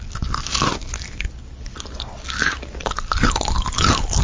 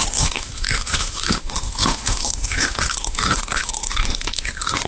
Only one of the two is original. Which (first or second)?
first